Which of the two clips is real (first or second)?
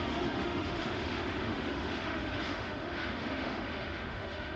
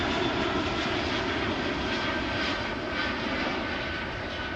second